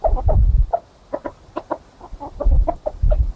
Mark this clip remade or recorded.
recorded